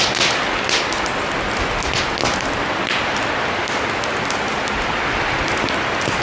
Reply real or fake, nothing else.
real